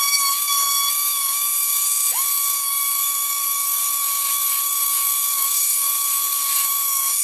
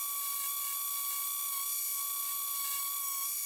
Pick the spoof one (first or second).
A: first